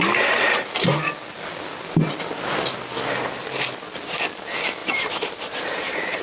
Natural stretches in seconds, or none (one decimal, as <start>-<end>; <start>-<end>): 0.0-4.8